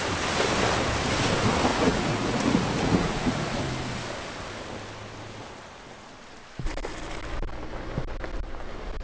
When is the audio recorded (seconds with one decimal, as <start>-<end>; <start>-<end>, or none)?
0.0-1.7; 3.6-9.0